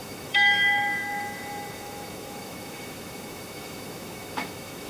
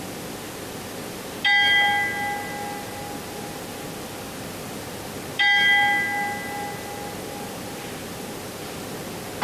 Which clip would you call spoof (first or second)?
first